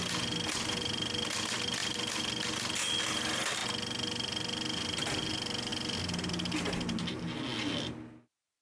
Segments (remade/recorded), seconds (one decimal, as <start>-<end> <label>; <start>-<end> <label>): 0.0-8.6 recorded